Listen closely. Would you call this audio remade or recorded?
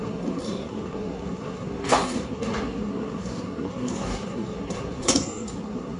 remade